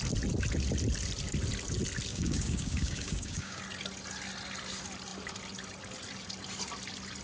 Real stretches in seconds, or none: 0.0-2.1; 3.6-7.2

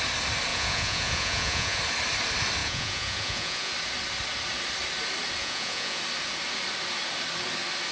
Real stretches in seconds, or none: 0.0-0.5; 1.8-2.6; 3.7-5.4; 6.0-7.9

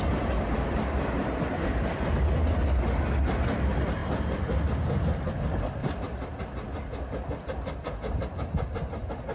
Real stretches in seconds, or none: 0.0-9.3

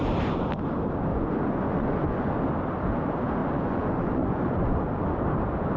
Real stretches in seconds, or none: 0.0-1.1; 2.3-3.4; 4.8-5.8

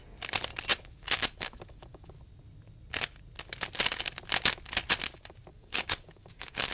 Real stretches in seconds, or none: 0.0-0.7; 2.2-5.5

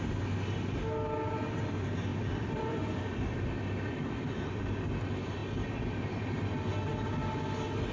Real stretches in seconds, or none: 0.0-2.1; 4.6-7.9

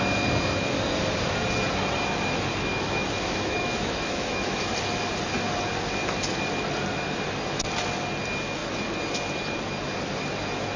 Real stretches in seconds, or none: 0.0-2.7; 4.7-10.8

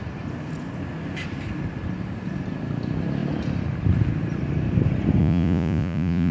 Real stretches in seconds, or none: 0.0-5.2